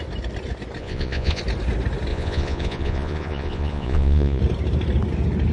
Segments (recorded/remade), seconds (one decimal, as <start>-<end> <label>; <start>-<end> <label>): 0.0-0.8 recorded; 0.8-1.4 remade; 1.4-2.1 recorded; 2.1-4.4 remade; 4.4-5.5 recorded